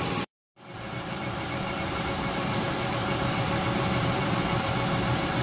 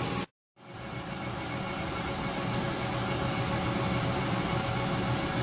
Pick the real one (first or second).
second